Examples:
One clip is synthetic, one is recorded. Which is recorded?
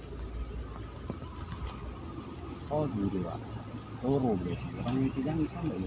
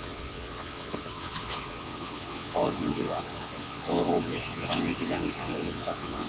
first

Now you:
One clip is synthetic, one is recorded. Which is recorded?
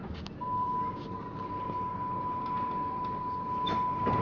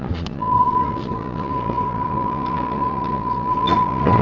first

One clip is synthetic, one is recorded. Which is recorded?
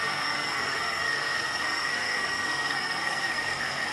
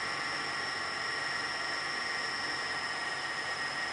second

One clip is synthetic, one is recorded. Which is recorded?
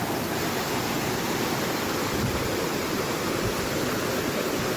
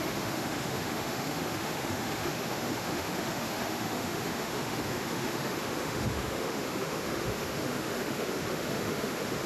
first